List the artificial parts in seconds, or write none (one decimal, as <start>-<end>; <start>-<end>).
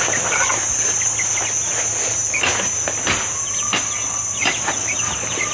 none